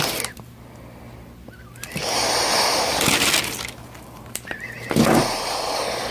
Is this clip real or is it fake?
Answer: real